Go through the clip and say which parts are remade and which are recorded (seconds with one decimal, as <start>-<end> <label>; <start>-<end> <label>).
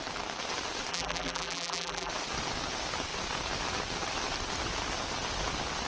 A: 0.0-0.9 recorded; 0.9-2.1 remade; 2.1-5.9 recorded